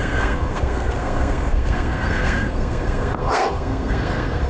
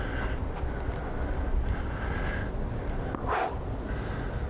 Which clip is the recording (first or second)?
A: second